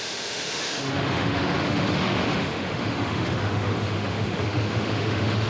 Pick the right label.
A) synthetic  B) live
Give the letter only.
A